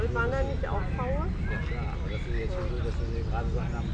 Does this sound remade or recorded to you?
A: recorded